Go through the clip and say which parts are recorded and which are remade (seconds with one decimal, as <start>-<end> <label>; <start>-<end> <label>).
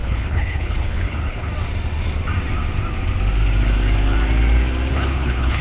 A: 0.0-1.5 remade; 1.5-4.9 recorded; 4.9-5.6 remade